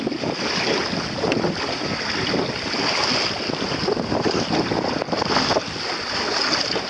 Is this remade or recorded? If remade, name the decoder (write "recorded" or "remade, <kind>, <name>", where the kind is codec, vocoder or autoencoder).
recorded